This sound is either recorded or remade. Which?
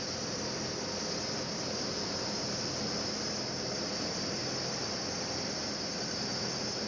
recorded